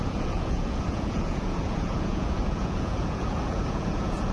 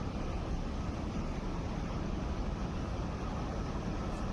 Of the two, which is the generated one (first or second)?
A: first